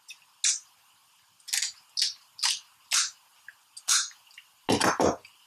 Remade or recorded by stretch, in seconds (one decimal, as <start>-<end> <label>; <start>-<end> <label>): 0.0-5.5 recorded